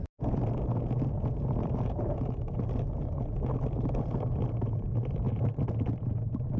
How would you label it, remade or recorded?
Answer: recorded